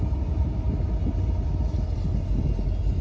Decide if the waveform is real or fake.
real